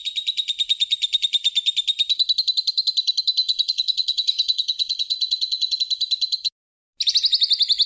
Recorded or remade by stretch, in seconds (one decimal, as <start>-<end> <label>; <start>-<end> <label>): 0.0-3.4 recorded; 3.4-5.8 remade; 5.8-7.9 recorded